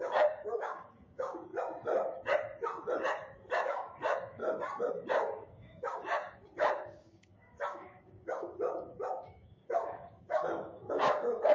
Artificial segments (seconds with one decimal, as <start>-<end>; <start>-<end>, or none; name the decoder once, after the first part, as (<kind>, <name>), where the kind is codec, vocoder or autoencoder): 0.0-1.5 (codec, DAC); 3.5-4.4; 5.1-11.5